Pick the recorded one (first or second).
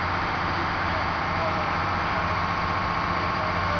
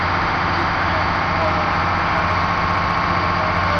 second